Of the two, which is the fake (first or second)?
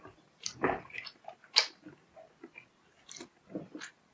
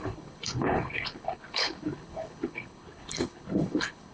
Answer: second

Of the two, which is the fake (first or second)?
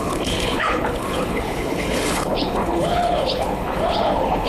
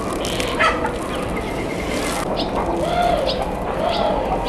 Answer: first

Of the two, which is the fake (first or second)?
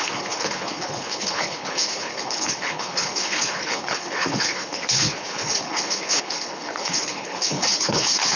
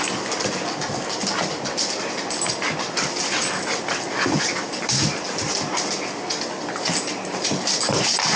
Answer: first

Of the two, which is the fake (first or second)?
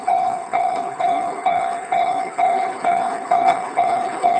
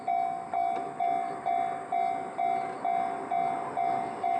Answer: first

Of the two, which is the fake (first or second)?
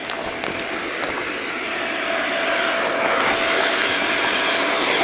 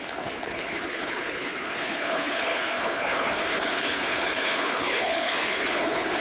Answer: second